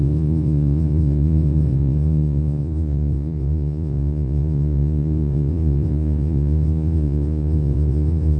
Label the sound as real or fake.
fake